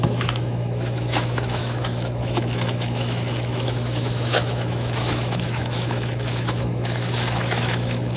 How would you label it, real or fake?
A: fake